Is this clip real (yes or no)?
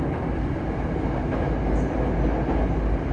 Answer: yes